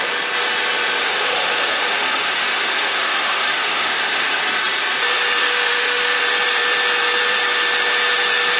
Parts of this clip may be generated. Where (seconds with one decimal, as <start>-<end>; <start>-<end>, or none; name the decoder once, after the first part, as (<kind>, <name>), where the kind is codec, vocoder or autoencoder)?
1.0-4.4 (autoencoder, DAC-VAE); 5.4-6.2